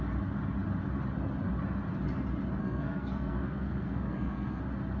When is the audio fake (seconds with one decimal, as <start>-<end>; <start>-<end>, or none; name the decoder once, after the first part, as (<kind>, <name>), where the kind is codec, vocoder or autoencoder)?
2.6-4.6 (codec, SNAC)